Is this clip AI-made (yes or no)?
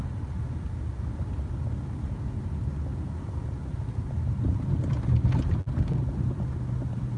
no